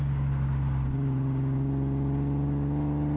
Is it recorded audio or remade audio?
recorded